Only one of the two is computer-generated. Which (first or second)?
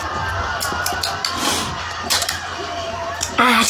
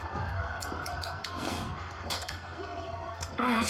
second